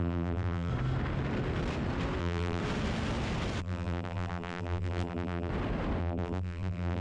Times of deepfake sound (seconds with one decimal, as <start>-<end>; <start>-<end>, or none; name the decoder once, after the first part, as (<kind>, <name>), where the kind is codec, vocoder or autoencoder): 0.0-0.7 (vocoder, BigVGAN v2); 2.2-2.6; 3.6-5.5; 6.0-7.0